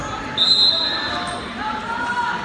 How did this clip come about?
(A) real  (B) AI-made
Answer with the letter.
A